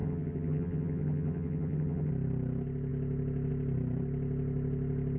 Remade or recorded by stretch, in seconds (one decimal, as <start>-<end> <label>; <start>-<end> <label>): 0.0-2.1 remade; 2.1-5.2 recorded